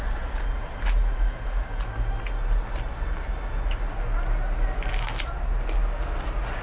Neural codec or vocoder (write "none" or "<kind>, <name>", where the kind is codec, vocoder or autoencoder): none